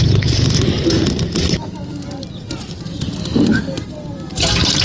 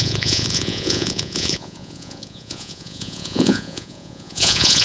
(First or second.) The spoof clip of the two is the second